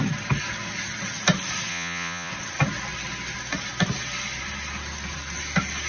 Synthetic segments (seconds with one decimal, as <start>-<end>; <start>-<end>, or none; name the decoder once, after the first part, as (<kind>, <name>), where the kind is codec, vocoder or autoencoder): 1.7-2.3 (vocoder, Vocos)